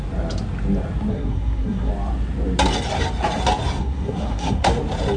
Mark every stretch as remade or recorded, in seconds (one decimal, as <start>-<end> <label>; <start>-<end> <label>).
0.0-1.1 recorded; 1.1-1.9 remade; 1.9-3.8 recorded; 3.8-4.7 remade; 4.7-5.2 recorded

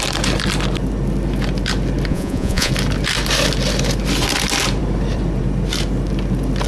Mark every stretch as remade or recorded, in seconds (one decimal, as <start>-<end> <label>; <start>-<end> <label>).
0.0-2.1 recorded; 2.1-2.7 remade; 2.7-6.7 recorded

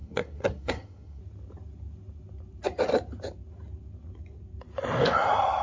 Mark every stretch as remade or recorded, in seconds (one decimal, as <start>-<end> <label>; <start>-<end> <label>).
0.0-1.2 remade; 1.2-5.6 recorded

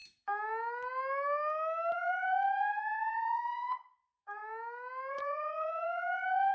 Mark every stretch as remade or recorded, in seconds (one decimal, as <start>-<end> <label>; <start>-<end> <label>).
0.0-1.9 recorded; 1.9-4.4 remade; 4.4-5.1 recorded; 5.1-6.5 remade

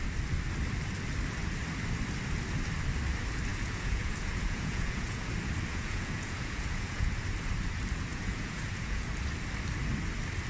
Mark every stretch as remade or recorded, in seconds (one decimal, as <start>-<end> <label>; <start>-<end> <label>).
0.0-3.5 recorded; 3.5-5.2 remade; 5.2-5.7 recorded; 5.7-7.1 remade; 7.1-8.1 recorded; 8.1-9.1 remade; 9.1-10.5 recorded

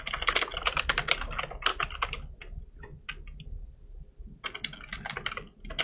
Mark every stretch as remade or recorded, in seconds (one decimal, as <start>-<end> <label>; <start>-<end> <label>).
0.0-5.8 recorded

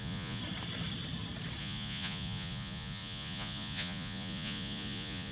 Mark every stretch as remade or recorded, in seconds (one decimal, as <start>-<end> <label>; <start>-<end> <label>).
0.0-0.4 remade; 0.4-1.6 recorded; 1.6-5.3 remade

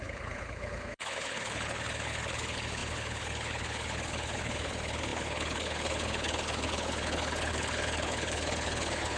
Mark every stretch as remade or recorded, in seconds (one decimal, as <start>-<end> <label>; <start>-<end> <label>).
0.0-9.2 remade